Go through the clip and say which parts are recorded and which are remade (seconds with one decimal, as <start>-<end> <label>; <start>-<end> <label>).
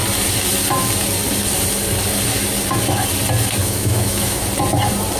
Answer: 0.0-3.6 recorded; 3.6-4.4 remade; 4.4-5.2 recorded